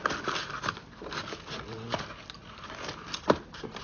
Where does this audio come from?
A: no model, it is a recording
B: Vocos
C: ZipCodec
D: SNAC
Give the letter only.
A